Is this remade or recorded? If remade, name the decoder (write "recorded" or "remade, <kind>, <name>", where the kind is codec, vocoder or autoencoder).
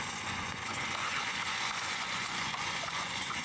remade, vocoder, Vocos